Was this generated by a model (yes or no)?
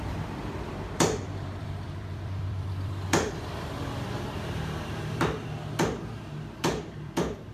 yes